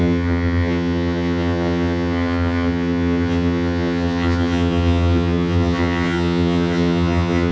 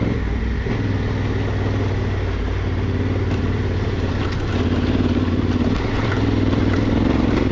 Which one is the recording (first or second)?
second